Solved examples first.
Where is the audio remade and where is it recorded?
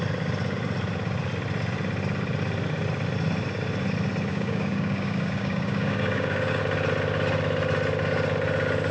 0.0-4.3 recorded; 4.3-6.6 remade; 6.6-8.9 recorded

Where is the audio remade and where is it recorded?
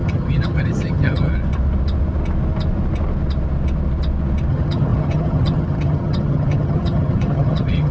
0.0-1.3 remade; 1.3-4.5 recorded; 4.5-7.9 remade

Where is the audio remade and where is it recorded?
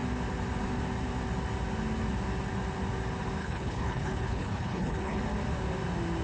0.0-3.4 recorded; 3.4-5.2 remade; 5.2-6.2 recorded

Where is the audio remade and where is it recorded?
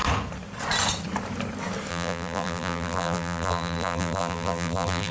0.0-1.9 recorded; 1.9-5.1 remade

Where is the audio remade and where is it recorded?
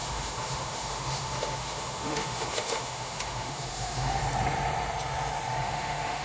0.0-4.2 remade; 4.2-5.6 recorded; 5.6-6.2 remade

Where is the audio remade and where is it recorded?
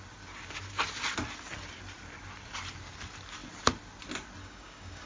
0.0-4.4 recorded; 4.4-5.1 remade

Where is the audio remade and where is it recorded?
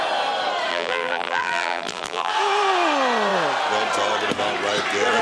0.0-0.7 recorded; 0.7-2.3 remade; 2.3-5.2 recorded